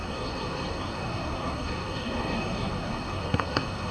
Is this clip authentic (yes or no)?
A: no